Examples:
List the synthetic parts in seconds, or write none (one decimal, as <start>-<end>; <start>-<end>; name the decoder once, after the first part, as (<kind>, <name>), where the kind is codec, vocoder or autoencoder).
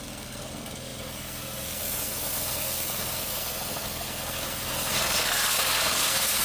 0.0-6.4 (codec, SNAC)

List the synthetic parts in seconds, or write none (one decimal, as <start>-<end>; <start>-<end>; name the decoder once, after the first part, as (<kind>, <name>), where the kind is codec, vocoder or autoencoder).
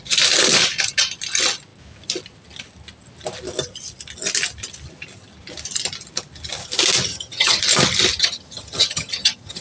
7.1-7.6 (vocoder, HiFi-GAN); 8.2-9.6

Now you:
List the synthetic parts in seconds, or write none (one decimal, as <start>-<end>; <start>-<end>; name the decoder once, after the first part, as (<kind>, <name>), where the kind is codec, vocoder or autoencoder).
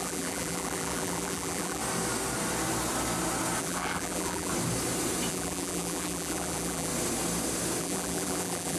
0.0-1.8 (vocoder, BigVGAN v2); 3.6-4.5; 5.3-6.9; 7.8-8.8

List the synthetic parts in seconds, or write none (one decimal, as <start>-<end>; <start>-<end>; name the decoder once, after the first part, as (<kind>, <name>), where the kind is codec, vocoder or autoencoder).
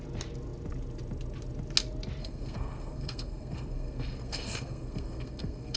2.2-5.8 (codec, SNAC)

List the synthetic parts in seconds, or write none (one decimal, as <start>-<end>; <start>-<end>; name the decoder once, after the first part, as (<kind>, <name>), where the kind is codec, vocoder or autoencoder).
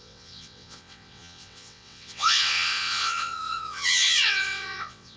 0.0-5.2 (vocoder, WaveNeXt)